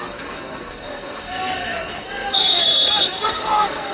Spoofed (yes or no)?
yes